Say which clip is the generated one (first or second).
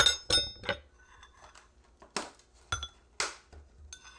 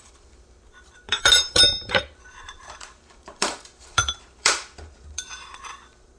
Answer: second